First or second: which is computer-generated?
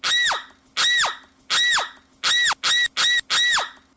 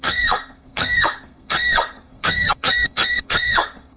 second